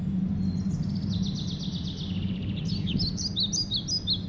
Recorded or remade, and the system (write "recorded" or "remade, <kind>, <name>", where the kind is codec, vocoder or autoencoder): recorded